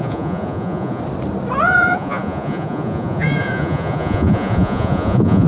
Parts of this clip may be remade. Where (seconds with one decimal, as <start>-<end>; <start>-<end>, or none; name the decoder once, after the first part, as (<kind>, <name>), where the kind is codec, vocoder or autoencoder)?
0.0-1.0 (vocoder, Vocos); 1.6-5.5